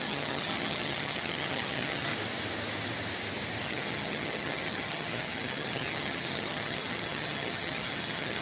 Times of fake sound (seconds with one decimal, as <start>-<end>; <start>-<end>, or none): 0.0-2.1; 3.6-8.4